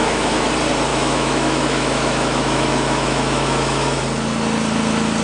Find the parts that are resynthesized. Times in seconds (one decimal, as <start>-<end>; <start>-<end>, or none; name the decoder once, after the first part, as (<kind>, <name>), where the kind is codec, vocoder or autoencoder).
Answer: 0.0-0.5 (autoencoder, DAC-VAE); 0.9-4.0